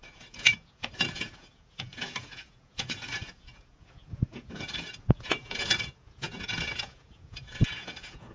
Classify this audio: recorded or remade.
remade